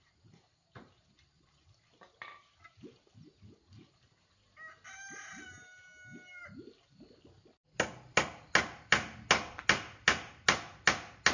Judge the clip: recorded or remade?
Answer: recorded